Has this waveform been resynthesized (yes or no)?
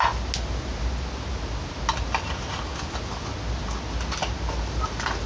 no